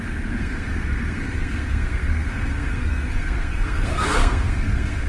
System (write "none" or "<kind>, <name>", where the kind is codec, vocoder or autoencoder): codec, SNAC